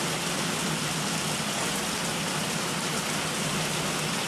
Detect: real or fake real